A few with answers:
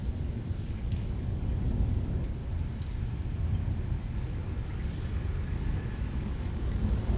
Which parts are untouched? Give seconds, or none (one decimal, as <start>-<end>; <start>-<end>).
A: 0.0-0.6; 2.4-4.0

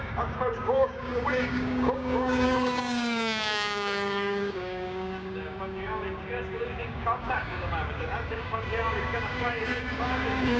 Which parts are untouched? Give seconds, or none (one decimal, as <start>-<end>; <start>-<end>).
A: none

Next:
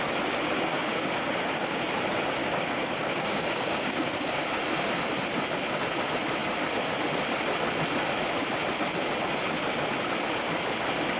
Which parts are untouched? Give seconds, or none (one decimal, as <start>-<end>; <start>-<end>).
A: 0.0-0.7; 1.8-2.4; 4.4-11.2

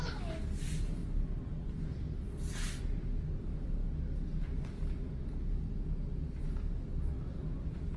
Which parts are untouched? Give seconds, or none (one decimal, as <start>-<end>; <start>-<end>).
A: 0.0-8.0

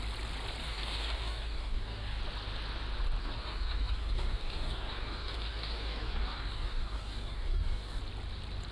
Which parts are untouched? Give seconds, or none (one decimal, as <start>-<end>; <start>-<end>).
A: 0.0-0.6; 2.2-3.2; 8.0-8.7

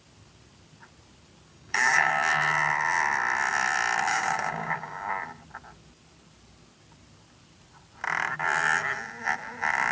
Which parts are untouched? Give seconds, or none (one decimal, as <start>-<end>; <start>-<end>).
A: 0.0-1.5; 2.1-4.1; 5.1-9.9